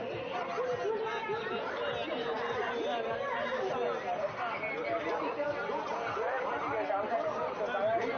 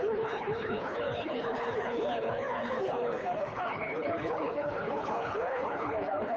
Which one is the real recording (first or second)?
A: first